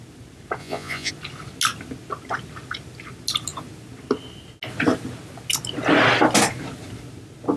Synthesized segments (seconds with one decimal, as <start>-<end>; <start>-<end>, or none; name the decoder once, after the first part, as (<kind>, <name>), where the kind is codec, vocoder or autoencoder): 0.6-1.1 (vocoder, Vocos)